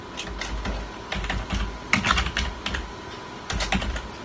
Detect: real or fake real